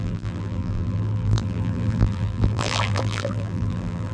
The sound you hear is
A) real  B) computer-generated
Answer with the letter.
B